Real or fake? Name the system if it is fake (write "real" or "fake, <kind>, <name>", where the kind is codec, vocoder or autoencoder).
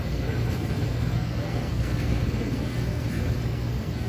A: fake, codec, SNAC